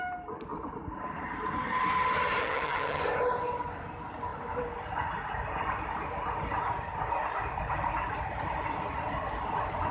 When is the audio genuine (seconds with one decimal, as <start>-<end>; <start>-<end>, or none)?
0.0-2.4; 3.0-9.9